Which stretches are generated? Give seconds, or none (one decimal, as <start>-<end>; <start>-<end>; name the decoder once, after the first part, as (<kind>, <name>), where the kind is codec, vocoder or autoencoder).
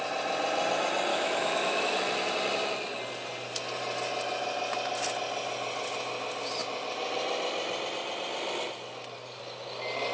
1.1-2.0 (autoencoder, DAC-VAE)